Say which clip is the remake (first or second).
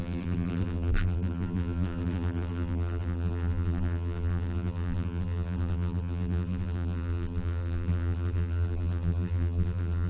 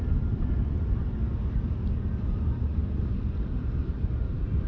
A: first